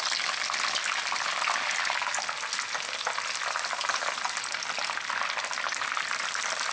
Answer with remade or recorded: recorded